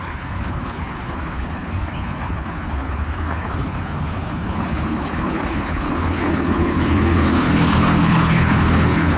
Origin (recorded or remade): remade